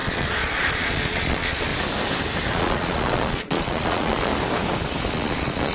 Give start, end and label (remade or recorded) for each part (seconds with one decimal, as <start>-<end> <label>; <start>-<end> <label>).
0.0-1.7 remade; 1.7-2.5 recorded; 2.5-4.3 remade; 4.3-5.1 recorded; 5.1-5.7 remade